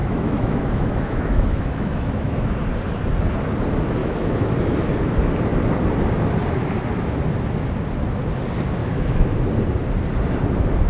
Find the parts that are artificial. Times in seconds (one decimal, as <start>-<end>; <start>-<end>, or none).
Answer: 0.0-2.6; 4.0-4.5; 8.8-9.5